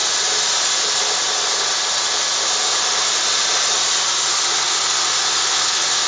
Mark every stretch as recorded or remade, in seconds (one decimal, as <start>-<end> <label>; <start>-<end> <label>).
0.0-6.1 recorded